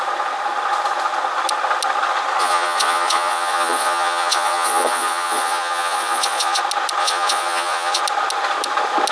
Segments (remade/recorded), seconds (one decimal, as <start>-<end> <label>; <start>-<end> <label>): 0.0-2.4 recorded; 2.4-6.6 remade; 6.6-7.0 recorded; 7.0-8.0 remade; 8.0-9.1 recorded